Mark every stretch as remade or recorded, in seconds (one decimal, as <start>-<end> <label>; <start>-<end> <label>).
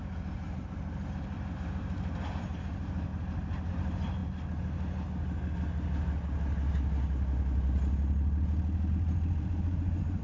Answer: 0.0-3.1 remade; 3.1-3.7 recorded; 3.7-4.2 remade; 4.2-8.9 recorded; 8.9-10.2 remade